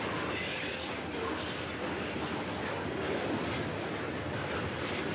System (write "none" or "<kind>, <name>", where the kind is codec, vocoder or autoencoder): none